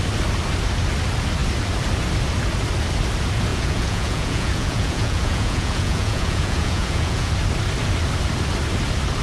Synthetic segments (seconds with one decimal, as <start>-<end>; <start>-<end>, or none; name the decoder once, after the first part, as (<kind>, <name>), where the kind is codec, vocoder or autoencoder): 3.5-7.3 (vocoder, Vocos)